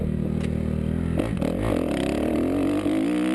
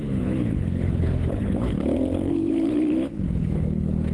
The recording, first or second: first